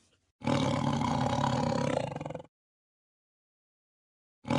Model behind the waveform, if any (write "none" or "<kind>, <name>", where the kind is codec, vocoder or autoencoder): none